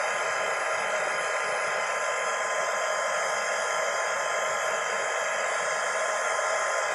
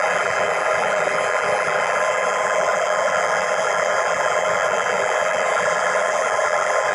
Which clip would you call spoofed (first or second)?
second